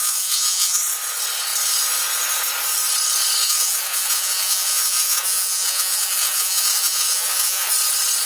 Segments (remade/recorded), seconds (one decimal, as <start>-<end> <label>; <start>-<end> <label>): 0.0-0.8 remade; 0.8-3.4 recorded; 3.4-7.7 remade; 7.7-8.3 recorded